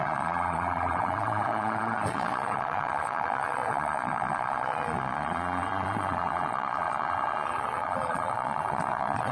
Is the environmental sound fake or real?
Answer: fake